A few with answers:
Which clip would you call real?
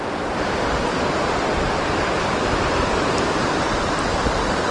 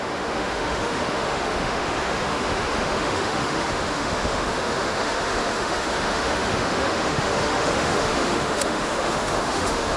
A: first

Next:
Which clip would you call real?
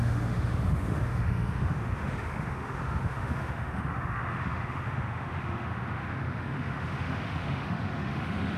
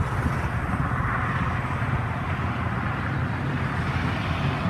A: second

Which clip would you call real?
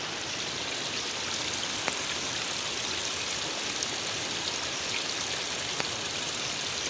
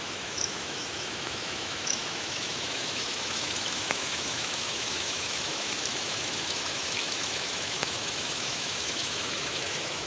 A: first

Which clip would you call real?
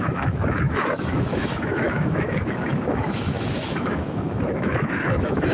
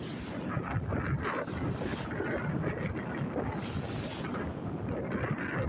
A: second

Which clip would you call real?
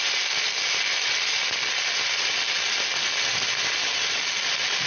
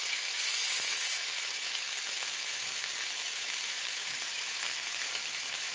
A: first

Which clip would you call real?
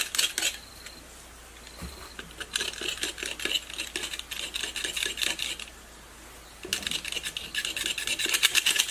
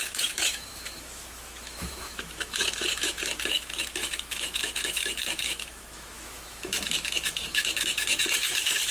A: first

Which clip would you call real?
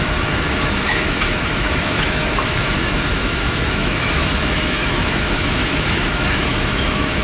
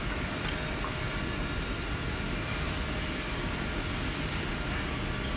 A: second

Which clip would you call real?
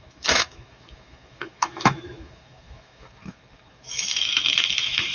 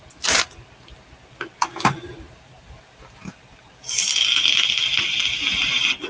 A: second